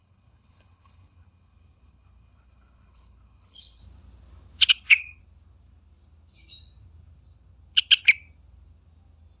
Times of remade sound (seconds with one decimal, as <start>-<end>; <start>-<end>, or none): 0.0-3.8; 4.7-5.2